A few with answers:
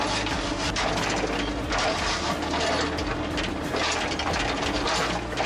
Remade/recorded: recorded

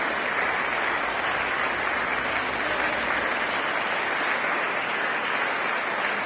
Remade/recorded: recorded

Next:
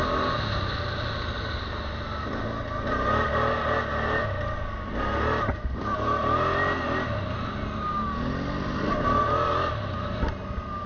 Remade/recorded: recorded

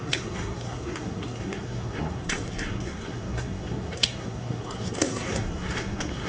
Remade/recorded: remade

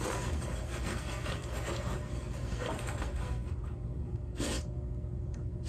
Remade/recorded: remade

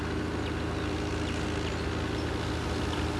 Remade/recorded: recorded